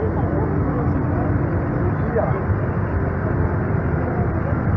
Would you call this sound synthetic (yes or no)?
no